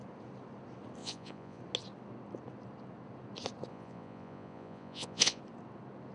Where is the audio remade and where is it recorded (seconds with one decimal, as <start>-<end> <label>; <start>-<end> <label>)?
0.0-1.0 recorded; 1.0-1.6 remade; 1.6-3.7 recorded; 3.7-5.4 remade; 5.4-6.1 recorded